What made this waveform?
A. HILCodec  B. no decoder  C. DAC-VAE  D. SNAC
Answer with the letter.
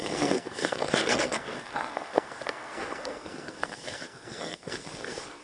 D